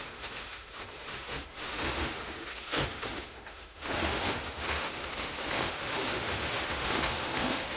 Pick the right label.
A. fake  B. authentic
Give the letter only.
A